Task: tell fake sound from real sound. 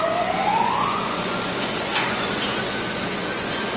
fake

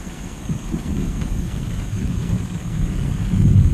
fake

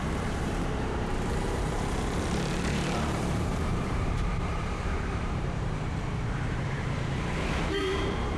fake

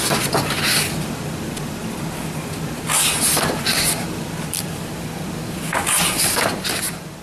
real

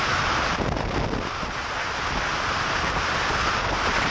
real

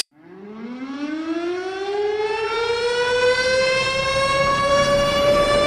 fake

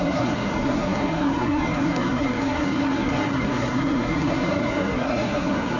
fake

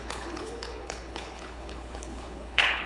fake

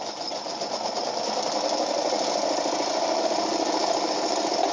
real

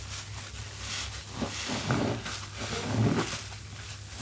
real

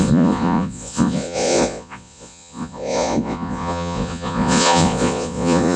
fake